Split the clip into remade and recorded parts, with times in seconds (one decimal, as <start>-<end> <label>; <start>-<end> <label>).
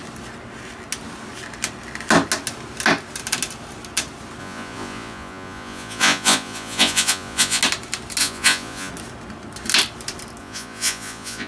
0.0-4.4 recorded; 4.4-7.6 remade; 7.6-8.2 recorded; 8.2-8.9 remade; 8.9-10.4 recorded; 10.4-11.5 remade